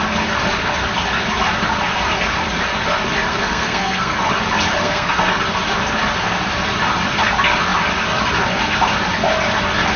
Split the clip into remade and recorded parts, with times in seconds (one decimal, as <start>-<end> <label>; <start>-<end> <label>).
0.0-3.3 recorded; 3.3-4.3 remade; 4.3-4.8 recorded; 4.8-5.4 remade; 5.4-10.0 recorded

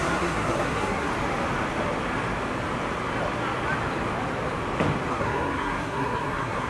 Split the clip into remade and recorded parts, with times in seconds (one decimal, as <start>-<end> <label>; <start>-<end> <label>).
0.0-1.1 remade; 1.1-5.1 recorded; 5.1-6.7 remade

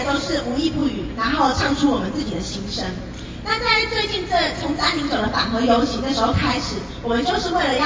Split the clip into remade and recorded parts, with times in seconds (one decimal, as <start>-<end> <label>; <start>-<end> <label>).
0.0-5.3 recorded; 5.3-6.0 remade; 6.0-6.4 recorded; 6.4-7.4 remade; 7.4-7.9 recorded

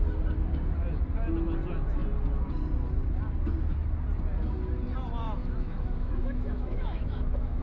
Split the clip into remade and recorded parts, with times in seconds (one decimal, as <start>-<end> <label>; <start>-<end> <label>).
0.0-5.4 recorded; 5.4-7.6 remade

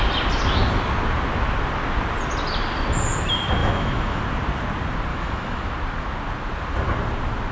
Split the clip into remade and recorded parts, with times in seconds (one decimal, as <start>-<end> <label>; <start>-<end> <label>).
0.0-3.6 recorded; 3.6-4.2 remade; 4.2-5.1 recorded; 5.1-5.7 remade; 5.7-7.5 recorded

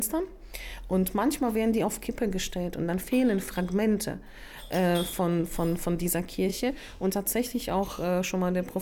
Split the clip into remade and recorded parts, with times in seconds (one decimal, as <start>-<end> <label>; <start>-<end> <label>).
0.0-6.5 recorded; 6.5-7.1 remade; 7.1-8.8 recorded

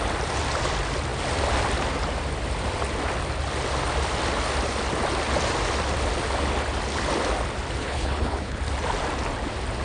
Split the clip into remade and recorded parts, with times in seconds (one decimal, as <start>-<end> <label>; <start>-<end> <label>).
0.0-7.8 recorded; 7.8-8.6 remade; 8.6-9.8 recorded